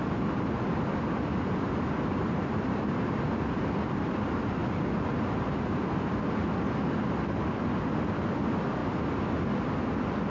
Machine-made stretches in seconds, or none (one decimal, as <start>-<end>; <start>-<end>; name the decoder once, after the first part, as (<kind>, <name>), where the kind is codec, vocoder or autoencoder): none